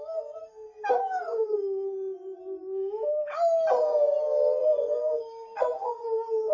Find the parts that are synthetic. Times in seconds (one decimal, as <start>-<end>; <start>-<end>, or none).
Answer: 0.4-2.4; 4.6-6.5